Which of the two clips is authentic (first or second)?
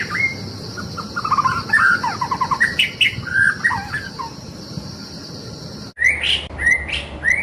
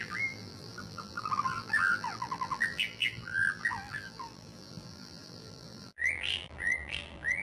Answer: first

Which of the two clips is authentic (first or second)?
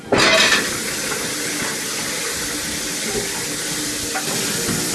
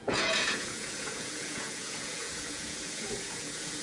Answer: first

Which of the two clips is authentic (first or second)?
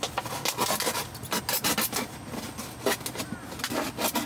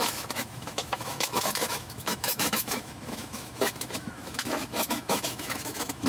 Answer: first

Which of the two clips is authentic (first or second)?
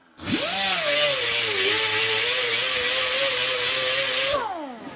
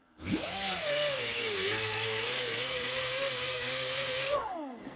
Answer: first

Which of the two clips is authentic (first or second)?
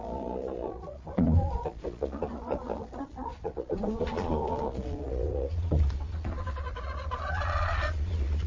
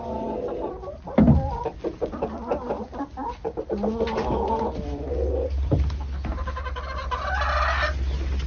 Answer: second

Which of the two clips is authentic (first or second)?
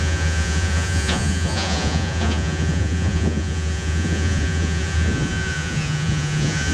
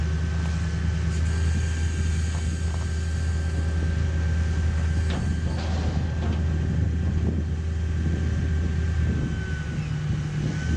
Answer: second